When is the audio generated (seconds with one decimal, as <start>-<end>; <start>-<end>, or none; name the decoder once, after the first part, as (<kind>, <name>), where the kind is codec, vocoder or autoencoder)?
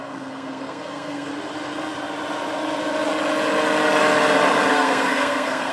0.0-1.3 (codec, SNAC); 4.7-5.7